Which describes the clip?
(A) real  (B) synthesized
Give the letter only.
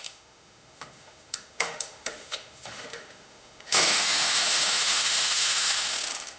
B